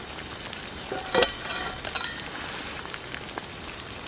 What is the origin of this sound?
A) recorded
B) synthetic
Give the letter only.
A